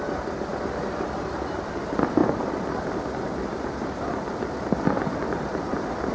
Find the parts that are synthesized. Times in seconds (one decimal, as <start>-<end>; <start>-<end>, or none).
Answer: none